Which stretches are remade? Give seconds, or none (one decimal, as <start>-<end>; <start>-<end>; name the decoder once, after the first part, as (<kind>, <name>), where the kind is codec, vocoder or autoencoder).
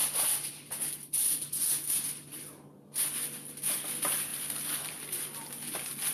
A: 4.3-5.2 (vocoder, BigVGAN v2)